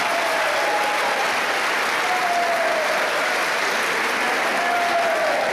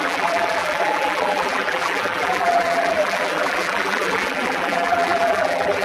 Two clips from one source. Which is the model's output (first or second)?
second